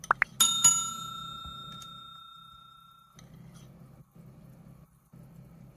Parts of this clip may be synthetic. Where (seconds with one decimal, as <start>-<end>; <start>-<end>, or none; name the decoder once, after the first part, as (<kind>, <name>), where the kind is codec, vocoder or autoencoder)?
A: none